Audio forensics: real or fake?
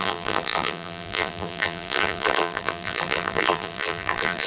fake